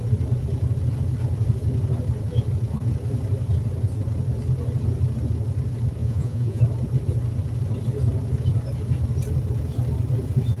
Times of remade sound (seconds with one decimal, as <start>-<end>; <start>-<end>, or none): 6.0-6.6